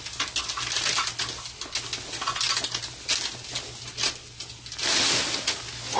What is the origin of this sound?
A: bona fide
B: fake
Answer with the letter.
A